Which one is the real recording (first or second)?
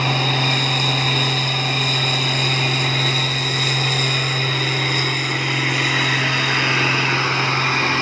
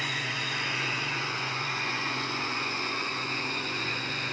first